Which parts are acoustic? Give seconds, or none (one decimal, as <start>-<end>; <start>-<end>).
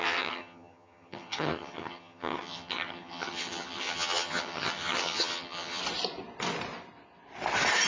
5.8-7.9